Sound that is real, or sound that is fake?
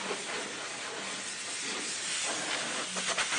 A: real